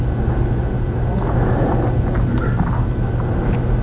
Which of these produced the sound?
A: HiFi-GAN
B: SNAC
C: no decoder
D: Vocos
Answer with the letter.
C